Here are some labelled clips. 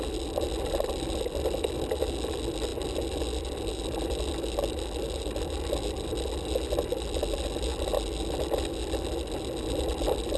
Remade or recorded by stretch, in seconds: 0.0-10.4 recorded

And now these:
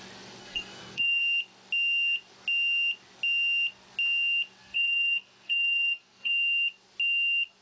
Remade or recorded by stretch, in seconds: 0.0-0.4 recorded; 0.4-1.2 remade; 1.2-4.6 recorded; 4.6-6.3 remade; 6.3-7.6 recorded

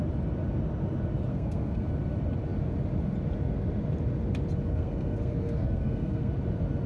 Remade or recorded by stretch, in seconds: 0.0-1.3 recorded; 1.3-1.8 remade; 1.8-4.7 recorded; 4.7-6.3 remade; 6.3-6.9 recorded